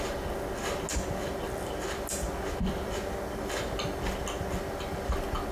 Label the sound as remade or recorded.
recorded